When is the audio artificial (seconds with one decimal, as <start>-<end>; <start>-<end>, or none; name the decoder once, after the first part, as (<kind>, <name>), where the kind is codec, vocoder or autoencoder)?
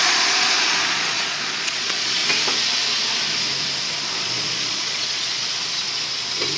0.0-2.2 (vocoder, Vocos); 4.1-5.4